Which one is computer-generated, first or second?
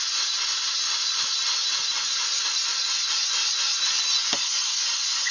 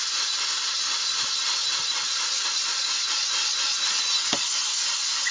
second